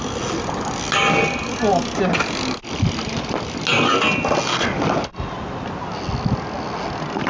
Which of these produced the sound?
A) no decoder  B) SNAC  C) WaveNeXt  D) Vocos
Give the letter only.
A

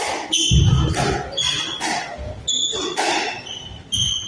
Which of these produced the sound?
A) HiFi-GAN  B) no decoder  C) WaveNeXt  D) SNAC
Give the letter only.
B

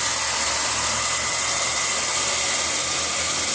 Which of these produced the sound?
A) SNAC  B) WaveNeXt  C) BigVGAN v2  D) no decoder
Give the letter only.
D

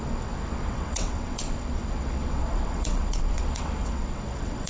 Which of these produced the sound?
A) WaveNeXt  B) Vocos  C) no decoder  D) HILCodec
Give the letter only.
A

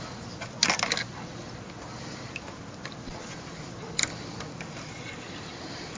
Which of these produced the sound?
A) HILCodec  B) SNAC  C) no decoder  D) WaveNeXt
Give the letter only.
C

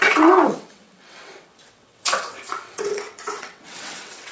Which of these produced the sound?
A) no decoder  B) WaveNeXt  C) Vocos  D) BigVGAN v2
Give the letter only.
B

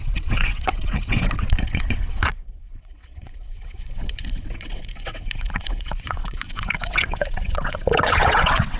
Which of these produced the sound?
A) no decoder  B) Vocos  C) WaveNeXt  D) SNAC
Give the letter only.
C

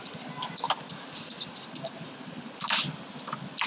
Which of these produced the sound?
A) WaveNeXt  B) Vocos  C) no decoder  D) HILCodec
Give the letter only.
C